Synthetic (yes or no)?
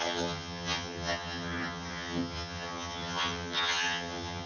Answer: yes